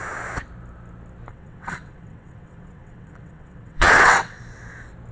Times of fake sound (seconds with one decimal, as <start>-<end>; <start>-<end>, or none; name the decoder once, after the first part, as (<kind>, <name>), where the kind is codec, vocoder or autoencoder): 1.3-4.4 (vocoder, WaveNeXt)